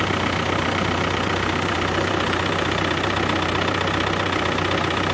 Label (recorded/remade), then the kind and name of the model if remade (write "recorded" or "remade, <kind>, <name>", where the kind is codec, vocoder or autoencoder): remade, vocoder, BigVGAN v2